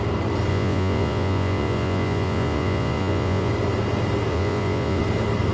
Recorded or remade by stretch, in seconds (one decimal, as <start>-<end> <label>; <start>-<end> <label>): 0.0-0.5 recorded; 0.5-3.5 remade; 3.5-4.3 recorded; 4.3-5.0 remade; 5.0-5.5 recorded